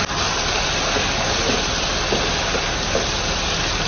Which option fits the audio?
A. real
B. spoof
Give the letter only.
B